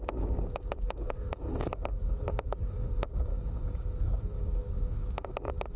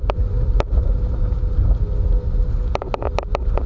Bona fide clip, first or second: second